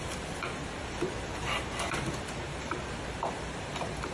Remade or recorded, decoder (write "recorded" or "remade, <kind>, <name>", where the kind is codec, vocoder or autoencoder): remade, vocoder, BigVGAN v2